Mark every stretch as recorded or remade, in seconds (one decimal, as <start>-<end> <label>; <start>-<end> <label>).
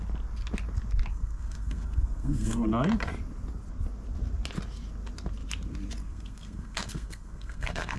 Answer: 0.0-1.1 recorded; 1.1-2.7 remade; 2.7-6.0 recorded; 6.0-8.0 remade